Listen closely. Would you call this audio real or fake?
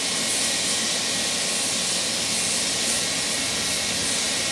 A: real